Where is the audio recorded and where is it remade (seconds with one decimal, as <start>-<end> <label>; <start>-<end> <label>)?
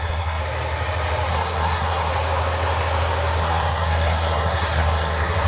0.0-0.4 remade; 0.4-1.3 recorded; 1.3-2.1 remade; 2.1-3.4 recorded; 3.4-5.5 remade